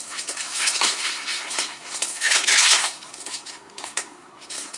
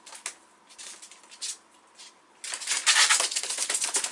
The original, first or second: second